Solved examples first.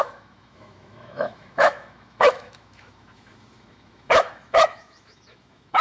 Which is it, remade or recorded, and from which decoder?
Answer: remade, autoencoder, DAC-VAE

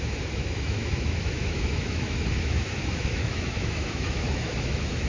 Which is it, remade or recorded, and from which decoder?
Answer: remade, autoencoder, DAC-VAE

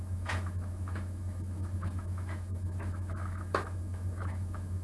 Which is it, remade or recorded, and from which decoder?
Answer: remade, autoencoder, DAC-VAE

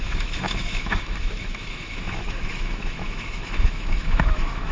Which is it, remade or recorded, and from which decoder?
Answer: remade, autoencoder, DAC-VAE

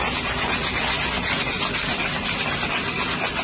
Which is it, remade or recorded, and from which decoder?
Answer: recorded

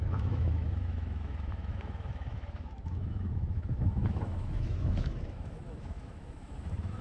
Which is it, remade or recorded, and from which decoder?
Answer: remade, autoencoder, DAC-VAE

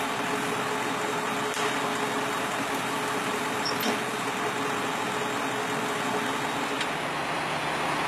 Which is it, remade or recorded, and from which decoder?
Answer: recorded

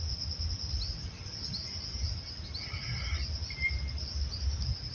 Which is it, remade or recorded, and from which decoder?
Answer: recorded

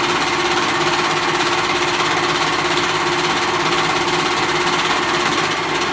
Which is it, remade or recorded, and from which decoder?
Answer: recorded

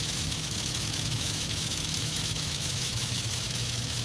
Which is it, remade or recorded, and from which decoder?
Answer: remade, autoencoder, DAC-VAE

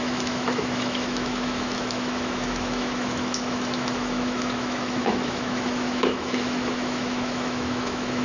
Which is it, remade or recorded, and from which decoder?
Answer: remade, autoencoder, DAC-VAE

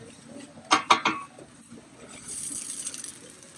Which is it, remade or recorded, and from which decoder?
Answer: recorded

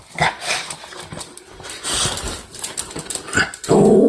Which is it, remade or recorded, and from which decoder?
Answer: recorded